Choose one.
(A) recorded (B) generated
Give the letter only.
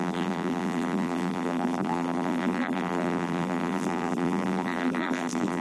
B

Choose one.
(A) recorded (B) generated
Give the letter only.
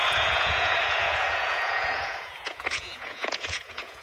B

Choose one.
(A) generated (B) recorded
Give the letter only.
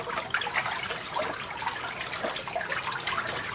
B